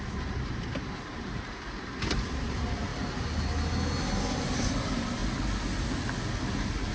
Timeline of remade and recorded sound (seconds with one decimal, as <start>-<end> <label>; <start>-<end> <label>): 0.0-2.9 remade; 2.9-4.4 recorded; 4.4-5.2 remade; 5.2-6.9 recorded